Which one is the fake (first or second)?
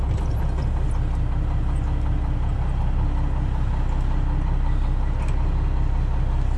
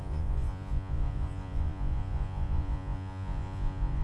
second